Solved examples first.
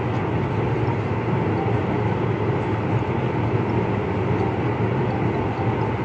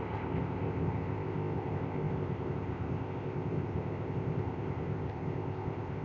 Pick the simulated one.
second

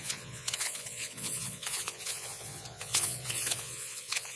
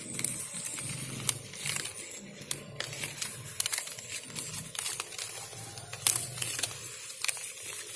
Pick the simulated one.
first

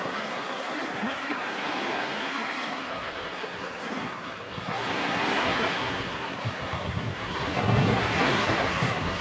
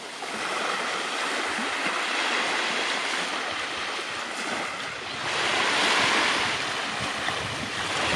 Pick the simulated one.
first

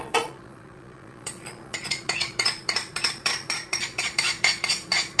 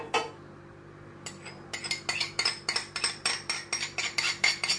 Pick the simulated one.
first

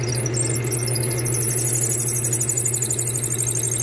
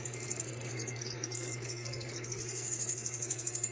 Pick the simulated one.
second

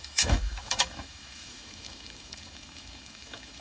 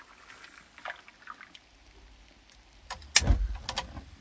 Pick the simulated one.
first